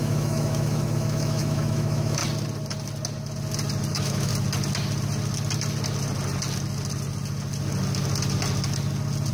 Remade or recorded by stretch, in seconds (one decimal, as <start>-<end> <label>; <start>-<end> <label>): 0.0-2.2 remade; 2.2-3.9 recorded; 3.9-4.3 remade; 4.3-9.3 recorded